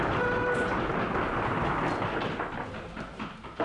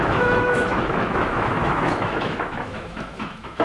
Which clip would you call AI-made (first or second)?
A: second